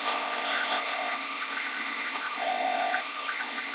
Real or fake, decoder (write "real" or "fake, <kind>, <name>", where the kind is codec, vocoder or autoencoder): fake, codec, ZipCodec